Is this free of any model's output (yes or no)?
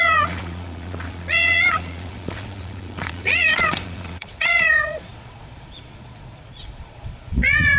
no